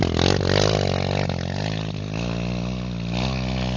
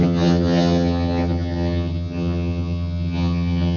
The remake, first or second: second